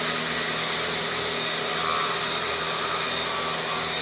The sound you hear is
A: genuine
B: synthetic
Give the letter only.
A